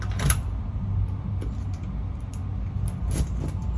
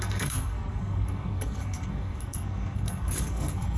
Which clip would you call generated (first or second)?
second